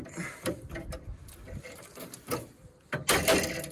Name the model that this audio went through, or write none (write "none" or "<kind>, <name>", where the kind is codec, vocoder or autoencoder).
none